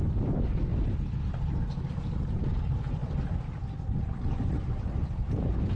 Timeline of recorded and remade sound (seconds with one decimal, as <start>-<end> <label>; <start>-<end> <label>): 0.0-0.7 remade; 0.7-1.9 recorded; 1.9-5.8 remade